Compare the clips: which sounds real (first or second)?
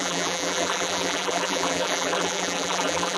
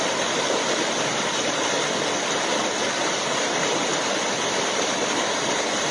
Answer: second